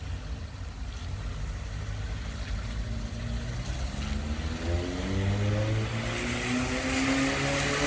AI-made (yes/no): no